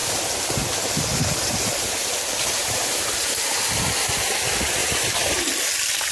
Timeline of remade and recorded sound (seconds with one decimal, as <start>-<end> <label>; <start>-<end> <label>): 0.0-2.9 remade; 2.9-4.8 recorded; 4.8-5.4 remade; 5.4-6.1 recorded